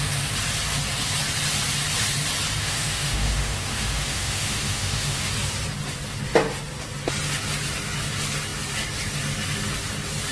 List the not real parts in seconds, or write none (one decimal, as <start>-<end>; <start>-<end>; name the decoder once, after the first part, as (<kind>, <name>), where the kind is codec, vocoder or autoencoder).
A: 2.6-5.3 (autoencoder, DAC-VAE)